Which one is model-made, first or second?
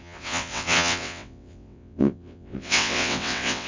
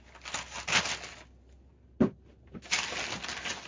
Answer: first